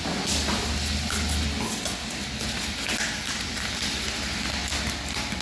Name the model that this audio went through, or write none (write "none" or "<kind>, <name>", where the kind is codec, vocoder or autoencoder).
none